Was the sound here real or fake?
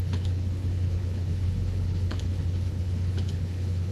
fake